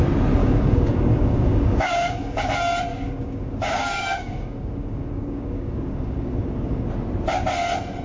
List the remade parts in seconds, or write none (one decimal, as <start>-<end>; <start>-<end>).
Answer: 0.4-2.4; 2.9-6.9